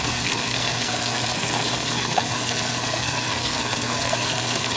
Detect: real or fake fake